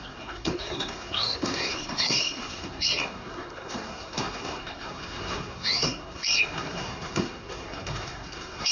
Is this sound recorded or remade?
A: remade